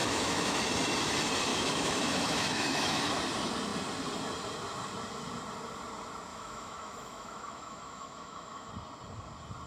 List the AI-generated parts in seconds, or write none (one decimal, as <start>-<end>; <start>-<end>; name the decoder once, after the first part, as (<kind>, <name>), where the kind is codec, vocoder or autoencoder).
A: 0.0-0.6 (autoencoder, DAC-VAE); 1.5-3.1; 6.3-8.7